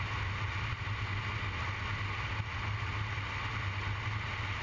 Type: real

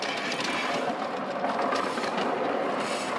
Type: real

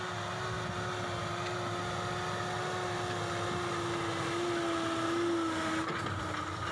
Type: real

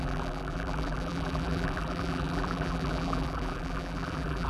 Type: fake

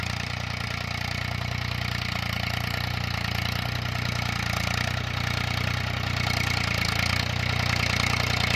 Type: real